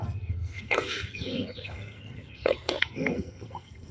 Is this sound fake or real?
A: fake